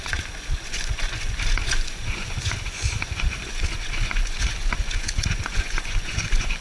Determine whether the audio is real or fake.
fake